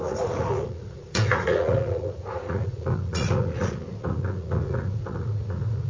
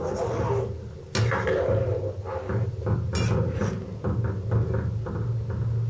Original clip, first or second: second